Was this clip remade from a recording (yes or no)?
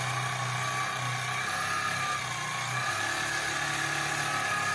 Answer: no